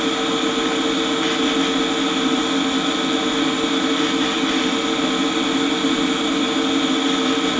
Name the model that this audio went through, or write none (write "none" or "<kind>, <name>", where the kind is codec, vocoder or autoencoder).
none